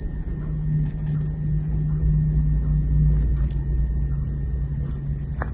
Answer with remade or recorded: recorded